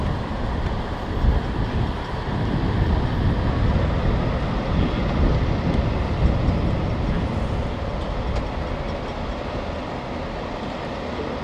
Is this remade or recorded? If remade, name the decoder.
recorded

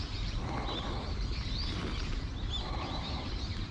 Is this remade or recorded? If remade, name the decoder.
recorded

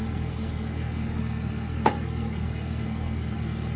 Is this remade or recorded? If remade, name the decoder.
remade, codec, SNAC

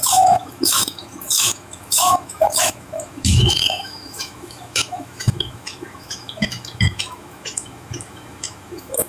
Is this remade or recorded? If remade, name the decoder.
remade, autoencoder, DAC-VAE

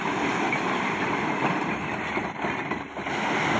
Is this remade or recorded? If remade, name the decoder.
remade, vocoder, BigVGAN v2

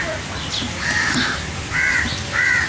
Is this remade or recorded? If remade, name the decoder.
recorded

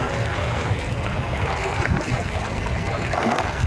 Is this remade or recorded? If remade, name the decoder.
remade, codec, SNAC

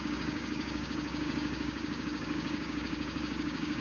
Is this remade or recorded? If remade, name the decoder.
remade, codec, DAC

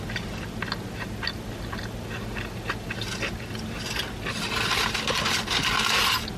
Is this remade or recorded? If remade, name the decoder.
recorded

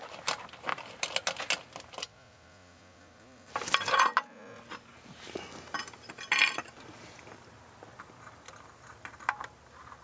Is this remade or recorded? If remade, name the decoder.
recorded